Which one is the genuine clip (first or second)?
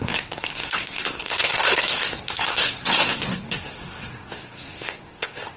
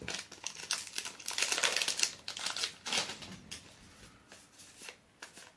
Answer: second